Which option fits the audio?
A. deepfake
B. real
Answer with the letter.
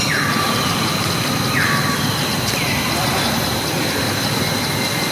B